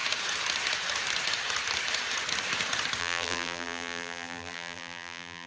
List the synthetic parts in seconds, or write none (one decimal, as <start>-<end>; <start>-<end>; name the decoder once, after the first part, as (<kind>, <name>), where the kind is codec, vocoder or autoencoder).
3.0-5.5 (vocoder, BigVGAN v2)